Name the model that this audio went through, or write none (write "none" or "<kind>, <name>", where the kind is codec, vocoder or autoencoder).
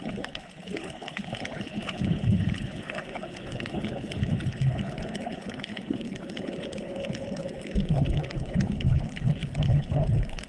codec, HILCodec